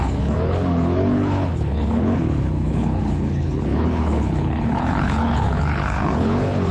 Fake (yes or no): yes